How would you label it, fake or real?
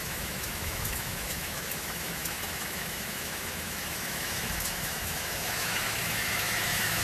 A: fake